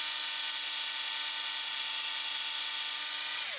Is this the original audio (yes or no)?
yes